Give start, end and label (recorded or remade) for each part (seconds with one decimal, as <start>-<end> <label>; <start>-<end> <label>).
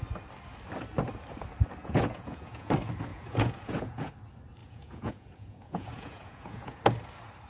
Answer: 0.0-1.8 recorded; 1.8-2.7 remade; 2.7-3.1 recorded; 3.1-4.1 remade; 4.1-4.6 recorded; 4.6-6.8 remade; 6.8-7.5 recorded